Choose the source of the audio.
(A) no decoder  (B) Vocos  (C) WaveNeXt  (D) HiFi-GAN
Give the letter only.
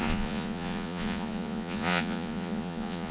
B